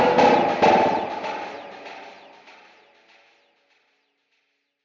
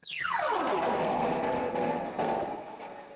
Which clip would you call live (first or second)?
first